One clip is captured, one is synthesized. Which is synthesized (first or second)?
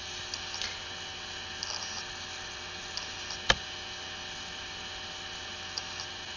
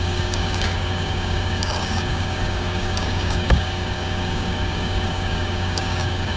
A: second